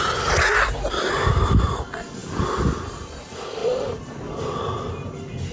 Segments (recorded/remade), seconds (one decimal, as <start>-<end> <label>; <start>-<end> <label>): 0.0-2.2 recorded; 2.2-2.8 remade; 2.8-3.6 recorded; 3.6-4.4 remade; 4.4-5.5 recorded